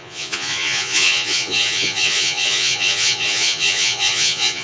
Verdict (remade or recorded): remade